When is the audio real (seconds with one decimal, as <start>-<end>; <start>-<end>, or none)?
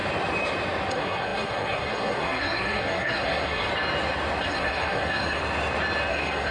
0.0-0.9; 3.7-4.4; 5.4-6.1